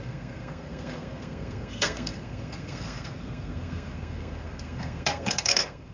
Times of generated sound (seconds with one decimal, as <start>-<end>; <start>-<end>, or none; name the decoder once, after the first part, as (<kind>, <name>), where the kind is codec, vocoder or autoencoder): 0.0-5.9 (codec, SNAC)

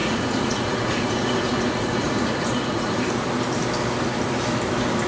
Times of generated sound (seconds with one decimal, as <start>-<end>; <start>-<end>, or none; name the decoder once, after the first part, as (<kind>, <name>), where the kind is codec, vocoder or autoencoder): 0.0-3.1 (vocoder, Vocos)

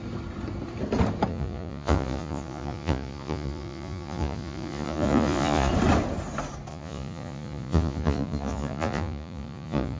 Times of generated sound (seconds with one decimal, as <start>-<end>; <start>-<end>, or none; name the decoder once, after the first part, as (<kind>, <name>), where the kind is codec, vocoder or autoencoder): 1.3-5.7 (vocoder, Vocos); 6.7-10.0

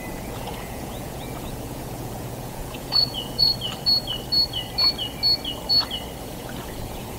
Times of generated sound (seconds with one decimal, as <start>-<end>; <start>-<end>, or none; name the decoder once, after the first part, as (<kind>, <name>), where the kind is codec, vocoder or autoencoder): 0.0-3.5 (vocoder, Vocos); 6.2-7.2

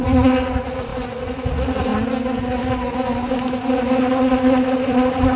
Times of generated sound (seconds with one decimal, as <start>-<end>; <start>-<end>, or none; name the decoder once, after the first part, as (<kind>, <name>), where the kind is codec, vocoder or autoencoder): 0.0-1.9 (vocoder, Vocos); 4.0-5.4

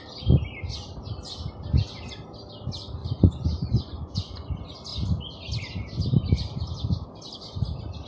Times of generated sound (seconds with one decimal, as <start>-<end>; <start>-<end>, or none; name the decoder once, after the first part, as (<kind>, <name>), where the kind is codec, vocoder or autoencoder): 3.0-4.5 (vocoder, Vocos)